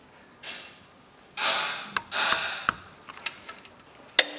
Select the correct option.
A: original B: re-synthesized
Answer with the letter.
A